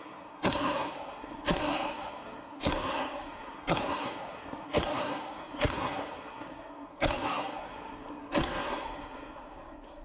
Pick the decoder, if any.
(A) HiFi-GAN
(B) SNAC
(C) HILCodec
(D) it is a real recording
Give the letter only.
B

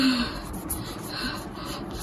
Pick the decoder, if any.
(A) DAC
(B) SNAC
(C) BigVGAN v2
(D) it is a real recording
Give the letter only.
D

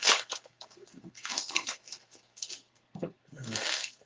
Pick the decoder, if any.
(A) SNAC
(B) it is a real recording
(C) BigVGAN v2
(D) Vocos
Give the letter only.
A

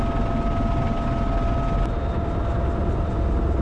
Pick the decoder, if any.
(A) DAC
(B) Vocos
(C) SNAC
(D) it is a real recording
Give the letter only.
D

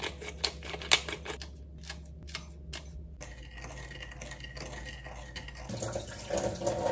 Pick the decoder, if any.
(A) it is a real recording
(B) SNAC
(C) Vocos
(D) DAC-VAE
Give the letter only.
A